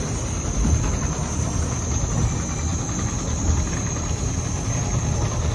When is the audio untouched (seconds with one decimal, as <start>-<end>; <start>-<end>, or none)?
0.0-5.5